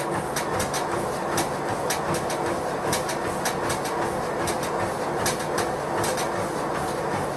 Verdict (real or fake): real